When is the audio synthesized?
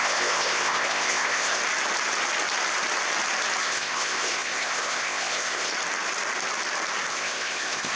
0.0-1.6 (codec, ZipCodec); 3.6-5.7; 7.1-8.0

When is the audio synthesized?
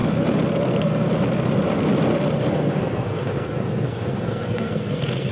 0.5-1.1 (codec, SNAC); 2.5-5.3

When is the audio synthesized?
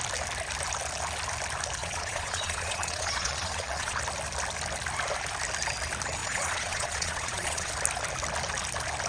1.8-4.0 (vocoder, Vocos); 6.2-7.7